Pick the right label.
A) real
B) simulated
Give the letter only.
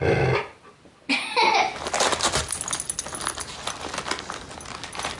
A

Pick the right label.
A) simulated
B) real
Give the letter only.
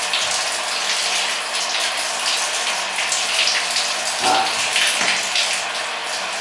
B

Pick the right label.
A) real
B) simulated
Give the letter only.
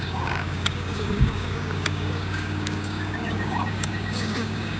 B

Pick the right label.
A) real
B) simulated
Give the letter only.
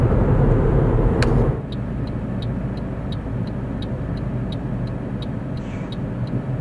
A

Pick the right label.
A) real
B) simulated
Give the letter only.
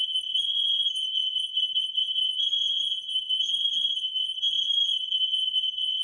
B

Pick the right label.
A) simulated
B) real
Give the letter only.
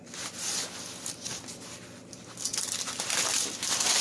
B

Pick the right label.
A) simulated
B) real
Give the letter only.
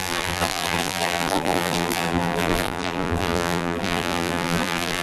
A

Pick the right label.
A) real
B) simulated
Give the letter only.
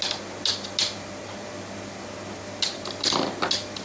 A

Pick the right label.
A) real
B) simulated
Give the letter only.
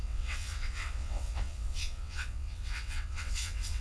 B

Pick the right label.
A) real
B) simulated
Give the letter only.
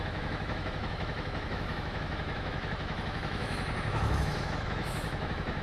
B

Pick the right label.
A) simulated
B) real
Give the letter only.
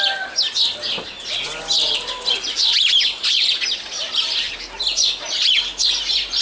B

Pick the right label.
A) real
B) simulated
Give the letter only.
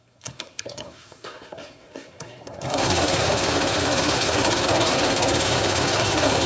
B